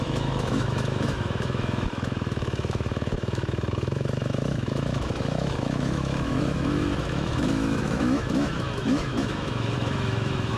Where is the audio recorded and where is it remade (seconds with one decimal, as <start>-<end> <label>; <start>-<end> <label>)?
0.0-10.6 remade